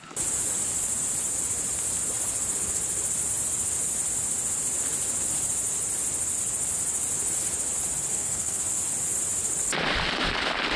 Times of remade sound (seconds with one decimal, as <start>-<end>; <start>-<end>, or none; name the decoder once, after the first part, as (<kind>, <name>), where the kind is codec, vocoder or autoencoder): 8.1-8.6 (codec, SNAC)